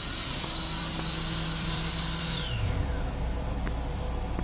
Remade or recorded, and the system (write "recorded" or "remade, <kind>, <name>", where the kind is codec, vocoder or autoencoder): remade, vocoder, BigVGAN v2